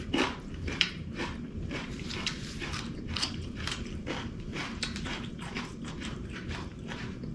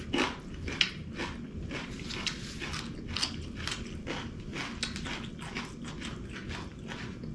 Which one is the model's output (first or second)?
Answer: first